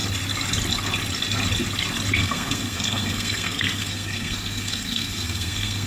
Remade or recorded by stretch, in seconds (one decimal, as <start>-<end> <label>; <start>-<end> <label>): 0.0-2.2 recorded; 2.2-5.9 remade